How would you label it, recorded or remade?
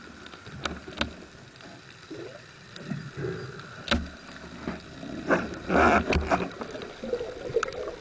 recorded